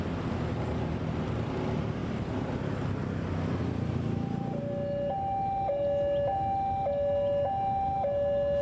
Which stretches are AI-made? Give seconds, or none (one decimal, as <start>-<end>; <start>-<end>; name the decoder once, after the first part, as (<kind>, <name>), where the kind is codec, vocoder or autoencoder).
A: 2.0-4.6 (vocoder, BigVGAN v2)